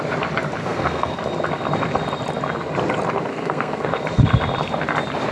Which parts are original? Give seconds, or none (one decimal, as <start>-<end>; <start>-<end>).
0.0-0.6; 1.2-3.3; 4.0-5.3